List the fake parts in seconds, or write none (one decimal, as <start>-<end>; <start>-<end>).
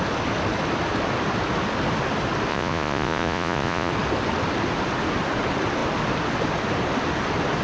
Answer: 2.5-3.9